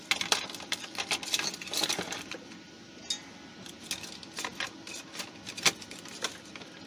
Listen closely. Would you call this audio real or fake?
real